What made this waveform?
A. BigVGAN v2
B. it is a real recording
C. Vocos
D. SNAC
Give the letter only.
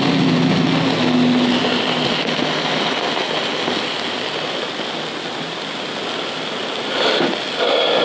B